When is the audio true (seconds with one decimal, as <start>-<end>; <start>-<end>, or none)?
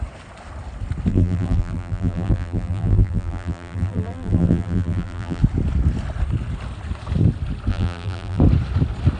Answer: 0.0-1.1; 5.4-7.7; 8.4-9.2